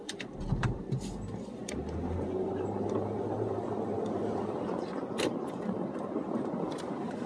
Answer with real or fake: fake